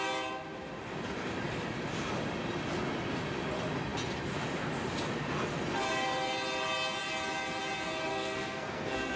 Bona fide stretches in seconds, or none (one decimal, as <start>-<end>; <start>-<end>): 0.0-8.1